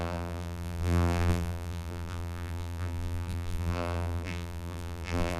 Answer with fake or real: fake